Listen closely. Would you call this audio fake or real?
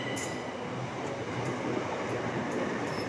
real